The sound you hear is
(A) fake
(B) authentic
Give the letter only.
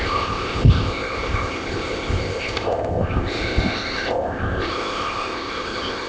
A